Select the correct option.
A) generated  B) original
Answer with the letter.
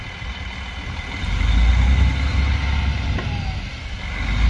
B